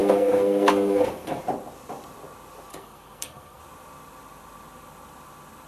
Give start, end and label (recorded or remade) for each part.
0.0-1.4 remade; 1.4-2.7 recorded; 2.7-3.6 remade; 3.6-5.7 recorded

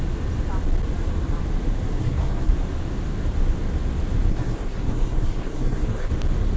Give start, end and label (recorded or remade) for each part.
0.0-2.0 recorded; 2.0-2.5 remade; 2.5-4.3 recorded; 4.3-6.1 remade; 6.1-6.6 recorded

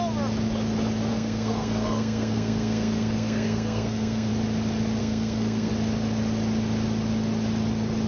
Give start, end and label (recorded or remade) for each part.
0.0-1.1 recorded; 1.1-4.3 remade; 4.3-5.0 recorded; 5.0-5.7 remade; 5.7-8.1 recorded